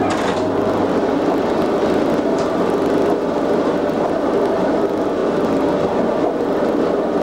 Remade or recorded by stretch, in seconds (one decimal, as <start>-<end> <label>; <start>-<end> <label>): 0.0-7.2 recorded